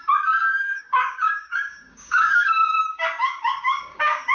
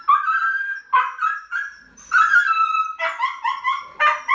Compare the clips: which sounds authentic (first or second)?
second